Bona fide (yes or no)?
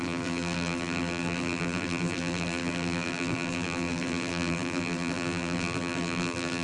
no